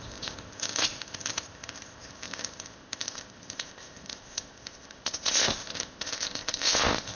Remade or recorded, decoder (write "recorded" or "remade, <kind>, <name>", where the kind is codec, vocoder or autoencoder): remade, codec, ZipCodec